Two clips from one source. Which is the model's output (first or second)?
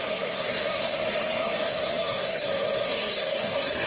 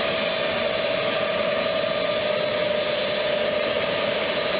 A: first